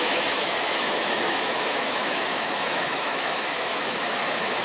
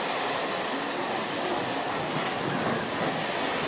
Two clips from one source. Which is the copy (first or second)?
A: first